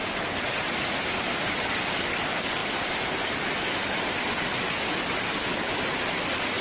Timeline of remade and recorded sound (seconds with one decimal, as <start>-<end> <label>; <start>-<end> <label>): 0.0-6.6 recorded